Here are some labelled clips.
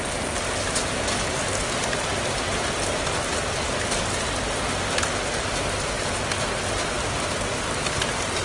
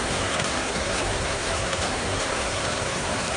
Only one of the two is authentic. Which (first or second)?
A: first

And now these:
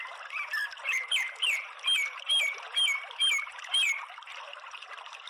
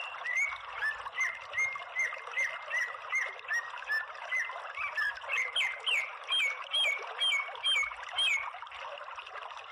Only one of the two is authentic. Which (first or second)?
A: second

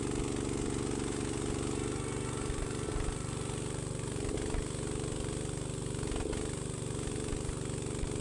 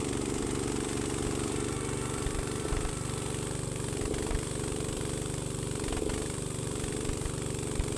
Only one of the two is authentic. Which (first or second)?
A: first